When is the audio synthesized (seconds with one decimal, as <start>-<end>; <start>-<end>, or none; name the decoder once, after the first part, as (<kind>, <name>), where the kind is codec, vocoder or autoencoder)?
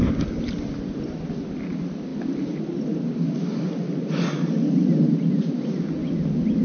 none